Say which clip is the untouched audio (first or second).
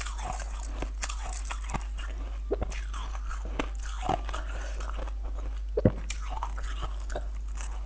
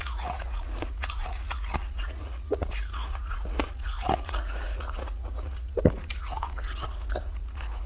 first